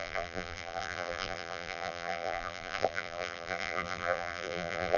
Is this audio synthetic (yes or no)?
yes